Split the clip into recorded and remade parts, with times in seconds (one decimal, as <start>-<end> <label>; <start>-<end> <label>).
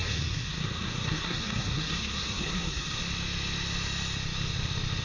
0.0-3.0 remade; 3.0-5.0 recorded